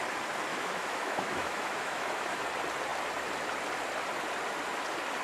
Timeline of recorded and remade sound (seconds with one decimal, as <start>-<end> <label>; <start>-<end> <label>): 0.0-0.5 recorded; 0.5-2.4 remade; 2.4-5.2 recorded